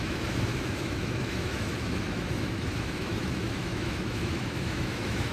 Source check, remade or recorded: remade